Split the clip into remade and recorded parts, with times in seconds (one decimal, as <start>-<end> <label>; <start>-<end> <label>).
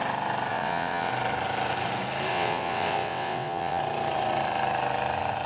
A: 0.0-0.5 recorded; 0.5-1.1 remade; 1.1-2.3 recorded; 2.3-3.8 remade; 3.8-5.5 recorded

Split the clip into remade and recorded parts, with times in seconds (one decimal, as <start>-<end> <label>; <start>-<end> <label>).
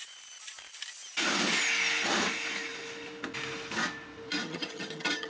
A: 0.0-4.4 recorded; 4.4-5.3 remade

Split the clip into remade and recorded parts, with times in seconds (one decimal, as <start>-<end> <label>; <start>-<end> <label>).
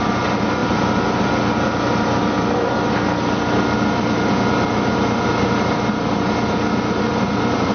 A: 0.0-7.7 recorded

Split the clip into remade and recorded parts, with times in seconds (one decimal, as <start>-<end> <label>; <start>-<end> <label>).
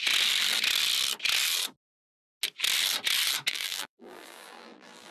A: 0.0-3.5 recorded; 3.5-5.1 remade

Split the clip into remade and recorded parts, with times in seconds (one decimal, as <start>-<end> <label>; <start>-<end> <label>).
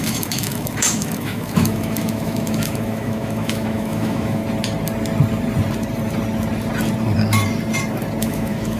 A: 0.0-4.4 remade; 4.4-8.2 recorded; 8.2-8.8 remade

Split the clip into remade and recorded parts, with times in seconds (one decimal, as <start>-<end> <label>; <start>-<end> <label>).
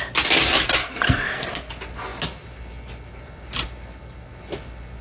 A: 0.0-0.8 recorded; 0.8-1.7 remade; 1.7-5.0 recorded